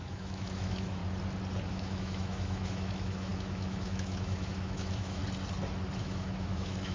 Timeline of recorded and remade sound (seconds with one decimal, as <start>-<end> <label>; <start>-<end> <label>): 0.0-1.0 remade; 1.0-1.7 recorded; 1.7-5.2 remade; 5.2-6.0 recorded; 6.0-6.9 remade